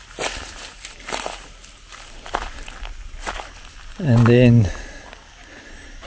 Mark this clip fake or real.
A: real